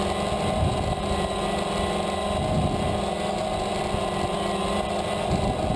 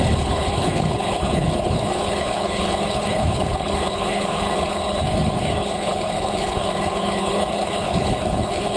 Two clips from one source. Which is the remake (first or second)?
second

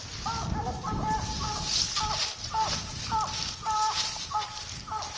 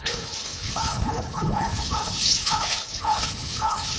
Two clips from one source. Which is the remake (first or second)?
second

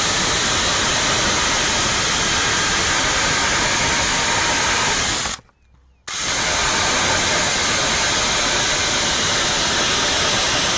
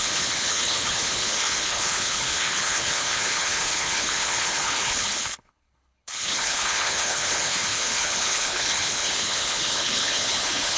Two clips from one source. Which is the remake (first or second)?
second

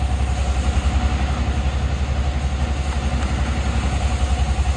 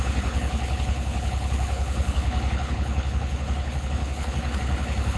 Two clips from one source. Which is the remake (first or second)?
second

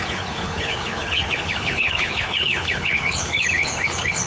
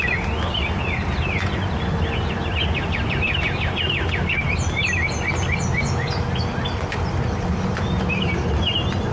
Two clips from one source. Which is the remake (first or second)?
first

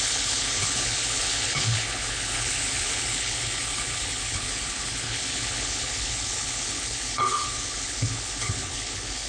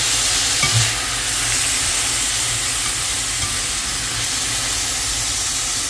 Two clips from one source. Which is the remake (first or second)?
first